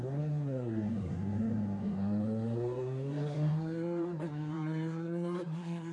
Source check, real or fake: fake